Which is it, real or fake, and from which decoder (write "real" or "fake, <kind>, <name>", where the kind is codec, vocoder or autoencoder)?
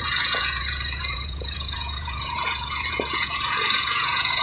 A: fake, vocoder, Vocos